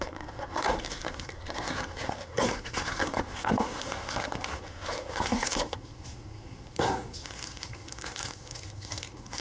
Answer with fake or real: fake